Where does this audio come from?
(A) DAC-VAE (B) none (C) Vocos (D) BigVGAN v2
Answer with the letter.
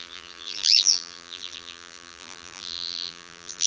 D